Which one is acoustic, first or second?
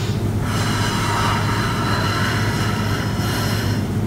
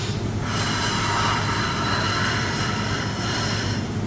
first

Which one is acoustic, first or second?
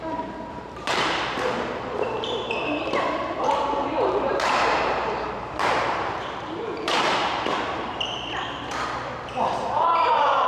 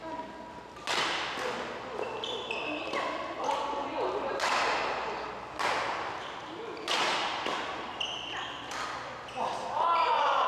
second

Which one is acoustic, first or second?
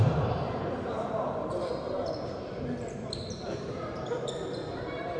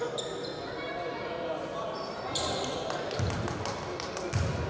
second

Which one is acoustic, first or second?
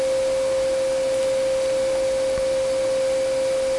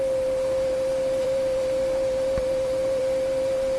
first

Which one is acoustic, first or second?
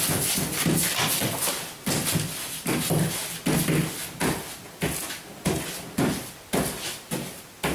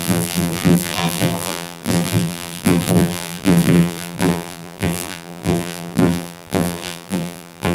first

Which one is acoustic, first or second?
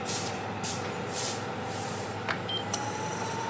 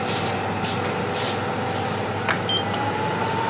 second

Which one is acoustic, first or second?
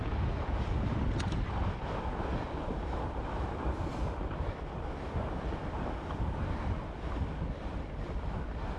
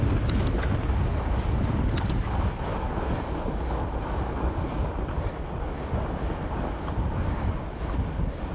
second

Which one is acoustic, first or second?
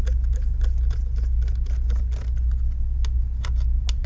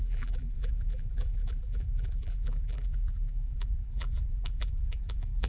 first